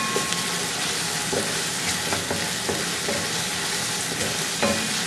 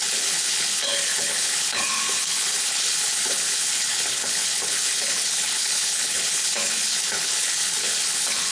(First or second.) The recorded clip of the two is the first